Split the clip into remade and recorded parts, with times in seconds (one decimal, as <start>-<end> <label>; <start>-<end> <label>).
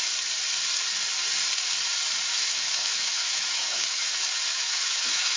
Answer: 0.0-2.3 recorded; 2.3-4.1 remade; 4.1-4.5 recorded; 4.5-5.4 remade